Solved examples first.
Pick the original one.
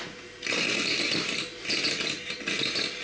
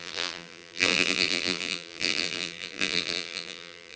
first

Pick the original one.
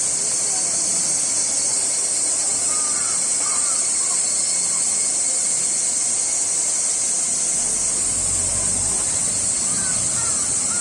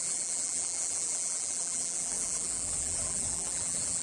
first